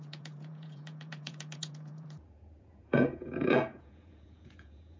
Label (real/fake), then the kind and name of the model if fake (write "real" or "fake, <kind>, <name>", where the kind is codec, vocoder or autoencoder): fake, vocoder, Vocos